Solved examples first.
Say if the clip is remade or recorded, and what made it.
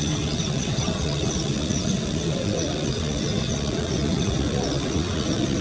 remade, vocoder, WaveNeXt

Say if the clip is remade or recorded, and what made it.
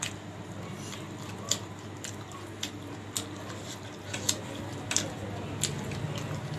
recorded